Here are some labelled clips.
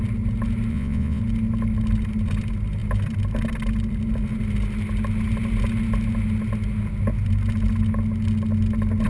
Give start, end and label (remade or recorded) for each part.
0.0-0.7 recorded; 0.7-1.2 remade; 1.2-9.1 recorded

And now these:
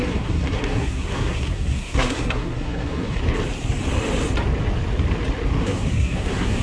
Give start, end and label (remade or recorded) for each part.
0.0-3.2 remade; 3.2-5.6 recorded; 5.6-6.6 remade

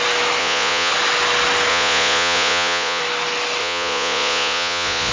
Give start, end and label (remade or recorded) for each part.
0.0-0.4 recorded; 0.4-0.9 remade; 0.9-1.7 recorded; 1.7-3.0 remade; 3.0-3.6 recorded; 3.6-5.1 remade

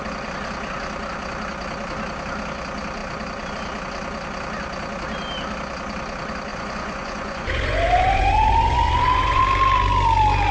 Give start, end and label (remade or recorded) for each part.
0.0-6.5 recorded; 6.5-9.4 remade; 9.4-10.5 recorded

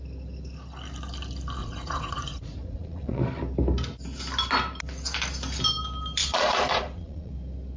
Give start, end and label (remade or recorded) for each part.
0.0-1.6 recorded; 1.6-3.2 remade; 3.2-6.2 recorded; 6.2-7.3 remade; 7.3-7.8 recorded

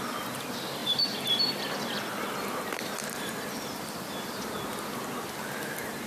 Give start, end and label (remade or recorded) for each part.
0.0-0.8 recorded; 0.8-4.5 remade; 4.5-6.1 recorded

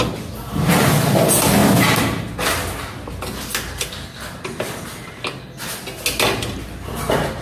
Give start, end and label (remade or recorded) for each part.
0.0-7.4 recorded